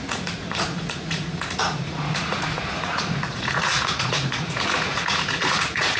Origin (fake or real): fake